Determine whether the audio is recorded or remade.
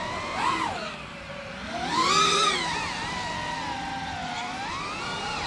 recorded